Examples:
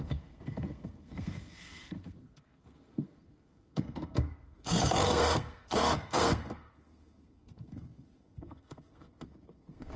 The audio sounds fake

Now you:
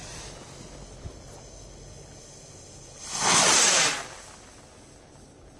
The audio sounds real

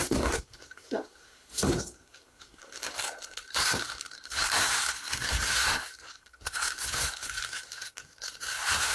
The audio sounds fake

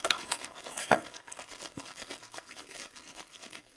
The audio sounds fake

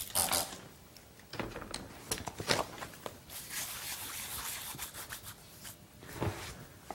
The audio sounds real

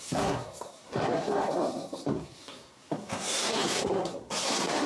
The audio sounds fake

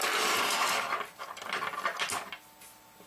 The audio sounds real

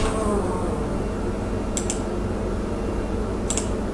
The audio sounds real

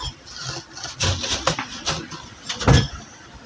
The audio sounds real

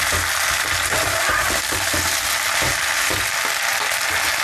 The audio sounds real